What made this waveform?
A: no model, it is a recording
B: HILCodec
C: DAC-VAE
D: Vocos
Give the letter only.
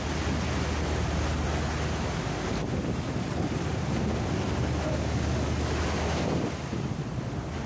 A